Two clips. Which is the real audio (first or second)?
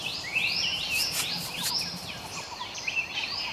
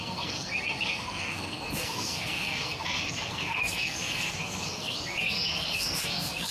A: first